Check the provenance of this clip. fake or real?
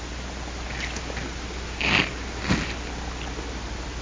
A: real